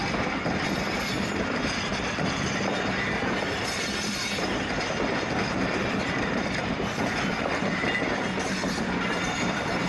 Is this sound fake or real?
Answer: real